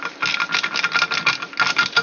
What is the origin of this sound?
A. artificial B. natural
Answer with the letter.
B